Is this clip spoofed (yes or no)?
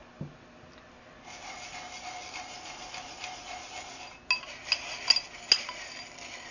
no